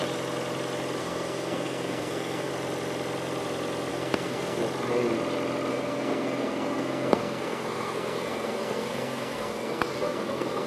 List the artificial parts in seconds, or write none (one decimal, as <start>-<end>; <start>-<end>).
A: 1.0-2.5; 3.9-4.6; 5.7-10.7